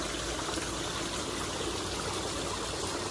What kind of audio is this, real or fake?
real